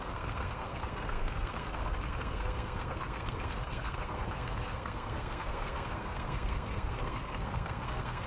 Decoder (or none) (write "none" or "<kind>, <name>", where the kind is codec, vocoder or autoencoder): codec, SNAC